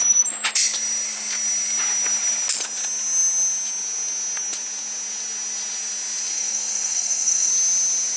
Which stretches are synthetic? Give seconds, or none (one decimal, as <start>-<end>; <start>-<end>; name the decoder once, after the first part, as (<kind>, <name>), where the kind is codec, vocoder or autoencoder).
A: 6.3-7.5 (codec, SNAC)